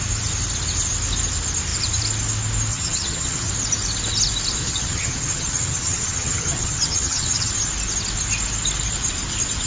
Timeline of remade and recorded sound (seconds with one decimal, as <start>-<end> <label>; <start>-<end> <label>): 0.0-2.7 recorded; 2.7-3.5 remade; 3.5-4.6 recorded; 4.6-7.5 remade; 7.5-9.7 recorded